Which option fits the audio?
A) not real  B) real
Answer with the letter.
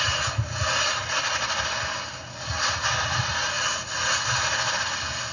B